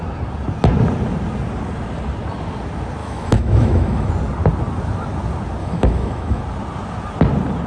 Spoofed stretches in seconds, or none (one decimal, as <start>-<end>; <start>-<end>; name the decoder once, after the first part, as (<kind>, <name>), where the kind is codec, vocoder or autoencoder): 3.0-4.1 (autoencoder, DAC-VAE); 5.6-6.4